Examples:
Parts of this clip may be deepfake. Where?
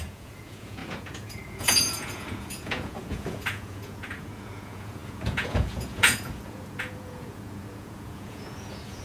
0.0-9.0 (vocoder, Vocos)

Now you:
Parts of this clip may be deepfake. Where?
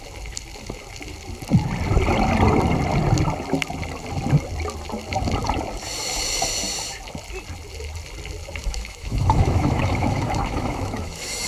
8.6-11.5 (autoencoder, DAC-VAE)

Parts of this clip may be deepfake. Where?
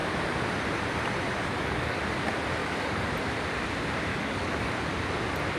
1.4-2.0 (codec, DAC); 2.6-3.1; 4.1-4.7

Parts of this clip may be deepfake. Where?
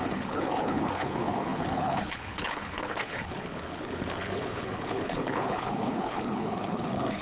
0.0-7.2 (codec, HILCodec)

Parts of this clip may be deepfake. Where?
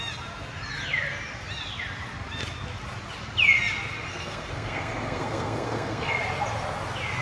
4.1-6.2 (codec, SNAC)